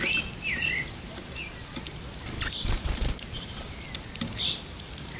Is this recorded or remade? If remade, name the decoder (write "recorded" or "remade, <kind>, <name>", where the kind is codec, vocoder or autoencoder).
recorded